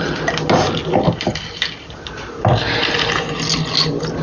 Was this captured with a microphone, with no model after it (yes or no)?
yes